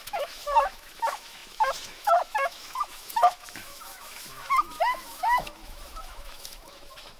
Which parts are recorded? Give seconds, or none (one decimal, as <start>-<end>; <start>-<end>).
none